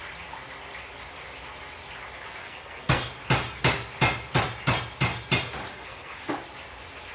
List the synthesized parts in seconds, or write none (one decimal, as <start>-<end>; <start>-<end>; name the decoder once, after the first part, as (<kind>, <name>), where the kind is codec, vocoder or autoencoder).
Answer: 2.4-3.1 (codec, SNAC); 5.7-6.2